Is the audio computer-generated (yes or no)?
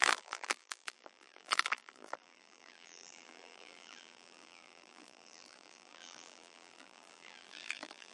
yes